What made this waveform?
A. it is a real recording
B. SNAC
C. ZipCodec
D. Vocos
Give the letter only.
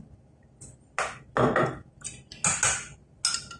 A